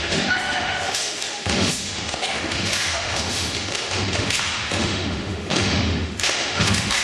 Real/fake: fake